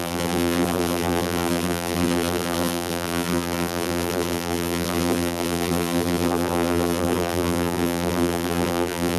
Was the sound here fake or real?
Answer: fake